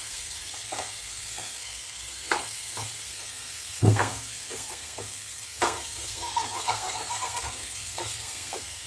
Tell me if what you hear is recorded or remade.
remade